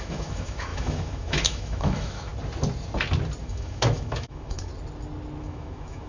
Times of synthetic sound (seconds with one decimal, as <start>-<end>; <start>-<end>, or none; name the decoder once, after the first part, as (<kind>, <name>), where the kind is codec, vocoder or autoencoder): 0.0-2.3 (autoencoder, DAC-VAE); 3.4-4.7; 5.4-6.1